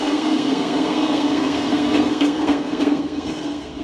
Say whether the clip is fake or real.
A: fake